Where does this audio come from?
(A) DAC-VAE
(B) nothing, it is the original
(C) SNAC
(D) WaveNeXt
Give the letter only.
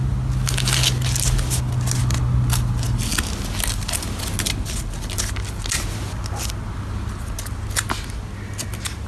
B